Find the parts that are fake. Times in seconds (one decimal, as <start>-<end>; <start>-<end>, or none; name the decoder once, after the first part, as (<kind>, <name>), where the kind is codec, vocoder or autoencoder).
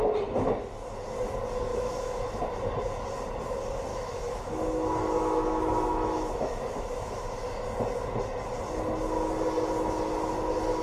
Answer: 1.7-2.4 (autoencoder, DAC-VAE); 3.9-7.3